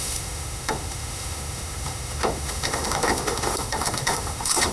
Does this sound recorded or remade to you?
remade